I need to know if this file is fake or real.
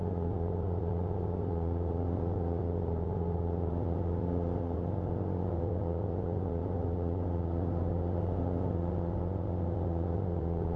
fake